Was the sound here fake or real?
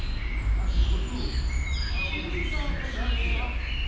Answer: real